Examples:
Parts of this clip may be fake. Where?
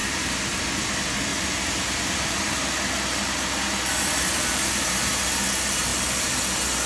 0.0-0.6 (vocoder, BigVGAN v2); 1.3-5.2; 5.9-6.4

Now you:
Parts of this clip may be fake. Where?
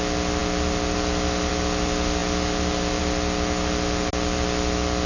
none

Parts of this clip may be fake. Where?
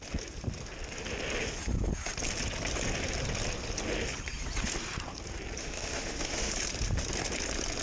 5.6-6.5 (autoencoder, DAC-VAE)